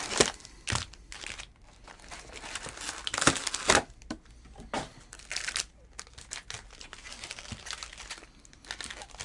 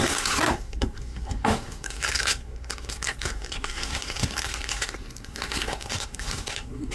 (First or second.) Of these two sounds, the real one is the first